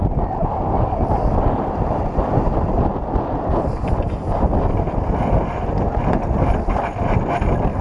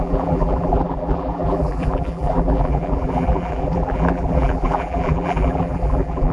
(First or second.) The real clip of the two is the first